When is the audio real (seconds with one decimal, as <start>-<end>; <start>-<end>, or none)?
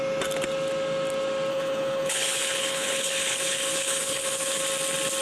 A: 0.0-1.5; 4.6-5.2